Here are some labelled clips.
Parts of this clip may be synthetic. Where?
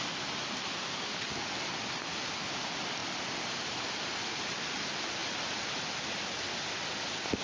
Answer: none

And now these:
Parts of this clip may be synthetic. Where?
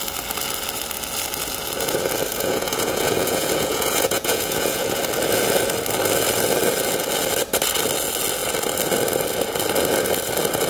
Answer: 2.3-5.0 (vocoder, Vocos)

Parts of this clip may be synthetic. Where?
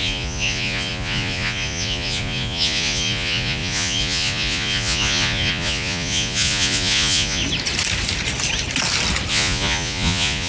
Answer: 0.0-7.4 (vocoder, Vocos); 9.3-10.5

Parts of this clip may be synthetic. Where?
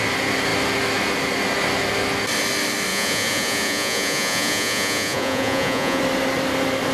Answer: 2.9-6.0 (vocoder, Vocos)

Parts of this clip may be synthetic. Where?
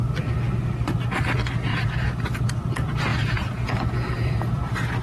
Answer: 1.7-2.4 (vocoder, Vocos); 3.1-4.6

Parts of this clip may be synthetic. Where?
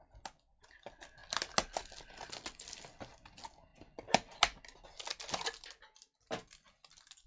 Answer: none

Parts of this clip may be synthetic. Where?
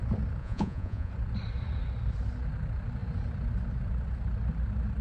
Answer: 0.4-1.1 (vocoder, Vocos)